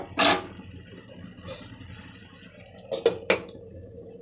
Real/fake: real